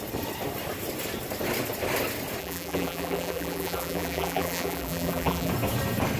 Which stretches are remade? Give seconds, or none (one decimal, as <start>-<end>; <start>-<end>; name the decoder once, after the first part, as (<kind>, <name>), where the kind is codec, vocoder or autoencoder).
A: 2.4-5.5 (vocoder, BigVGAN v2)